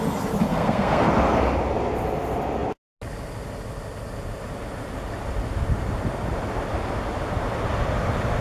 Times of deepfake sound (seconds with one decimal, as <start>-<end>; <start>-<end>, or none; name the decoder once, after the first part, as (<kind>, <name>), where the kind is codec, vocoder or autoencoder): 0.5-1.1 (codec, SNAC)